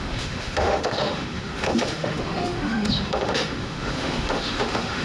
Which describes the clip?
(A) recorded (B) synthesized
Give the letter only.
B